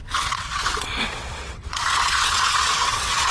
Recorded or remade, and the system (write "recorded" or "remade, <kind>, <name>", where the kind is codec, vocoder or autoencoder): remade, vocoder, WaveNeXt